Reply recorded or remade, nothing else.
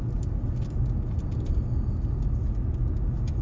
recorded